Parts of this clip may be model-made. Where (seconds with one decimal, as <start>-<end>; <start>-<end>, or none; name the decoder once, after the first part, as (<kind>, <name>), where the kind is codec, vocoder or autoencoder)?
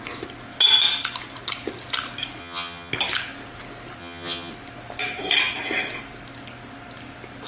2.4-2.9 (vocoder, HiFi-GAN); 4.0-4.5